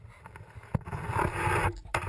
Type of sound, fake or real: real